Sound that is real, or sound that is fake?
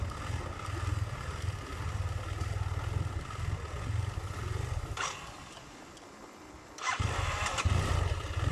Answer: real